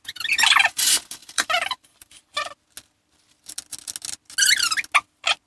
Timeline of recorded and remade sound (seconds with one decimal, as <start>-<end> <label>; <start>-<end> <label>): 0.0-1.2 recorded; 1.2-2.3 remade; 2.3-5.5 recorded